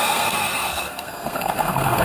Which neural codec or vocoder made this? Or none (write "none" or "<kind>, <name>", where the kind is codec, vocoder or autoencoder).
codec, SNAC